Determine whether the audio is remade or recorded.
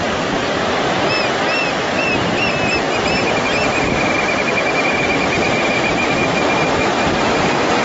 recorded